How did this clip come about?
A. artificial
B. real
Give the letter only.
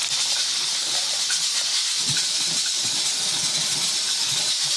B